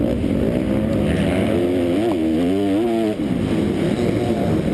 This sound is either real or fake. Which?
real